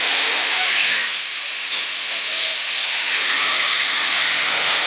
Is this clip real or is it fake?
fake